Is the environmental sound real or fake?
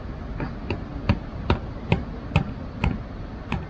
real